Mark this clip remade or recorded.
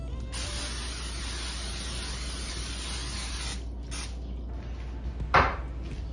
recorded